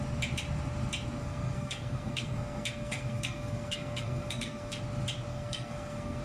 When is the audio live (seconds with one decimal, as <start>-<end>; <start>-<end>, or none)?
0.0-1.2; 4.8-5.3